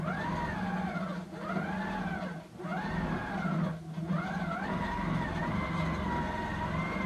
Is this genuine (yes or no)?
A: yes